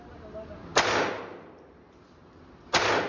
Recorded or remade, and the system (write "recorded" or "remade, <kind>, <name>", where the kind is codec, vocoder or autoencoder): recorded